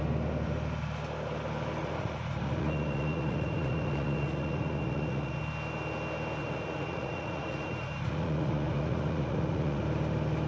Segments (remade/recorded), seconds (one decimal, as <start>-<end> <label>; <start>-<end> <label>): 0.0-1.8 recorded; 1.8-5.4 remade; 5.4-6.4 recorded; 6.4-9.8 remade; 9.8-10.5 recorded

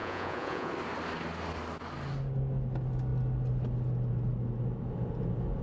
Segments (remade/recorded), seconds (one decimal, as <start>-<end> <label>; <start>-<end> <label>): 0.0-0.7 remade; 0.7-5.6 recorded